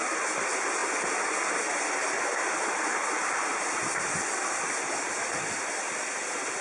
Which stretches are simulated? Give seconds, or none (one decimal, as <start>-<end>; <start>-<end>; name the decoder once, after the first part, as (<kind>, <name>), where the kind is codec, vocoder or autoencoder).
none